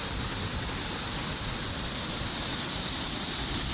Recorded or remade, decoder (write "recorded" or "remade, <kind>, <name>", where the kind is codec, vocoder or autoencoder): remade, vocoder, BigVGAN v2